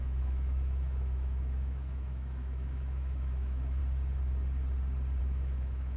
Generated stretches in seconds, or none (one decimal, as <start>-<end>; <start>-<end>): 0.0-3.8; 5.2-6.0